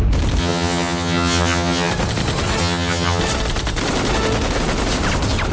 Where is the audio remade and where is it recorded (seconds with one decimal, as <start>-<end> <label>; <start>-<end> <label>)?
0.0-0.4 recorded; 0.4-1.9 remade; 1.9-2.6 recorded; 2.6-3.2 remade; 3.2-5.5 recorded